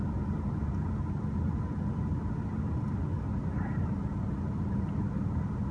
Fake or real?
real